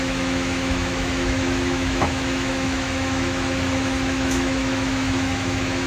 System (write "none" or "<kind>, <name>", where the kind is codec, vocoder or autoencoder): autoencoder, DAC-VAE